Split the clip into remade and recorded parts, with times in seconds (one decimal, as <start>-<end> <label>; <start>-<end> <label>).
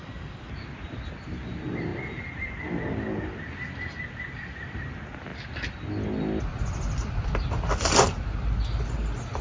0.0-9.4 recorded